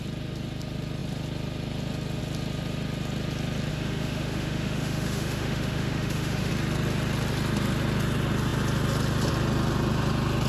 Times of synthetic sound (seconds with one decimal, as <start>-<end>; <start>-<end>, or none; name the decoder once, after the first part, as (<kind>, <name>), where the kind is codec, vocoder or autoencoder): 3.7-6.5 (autoencoder, DAC-VAE)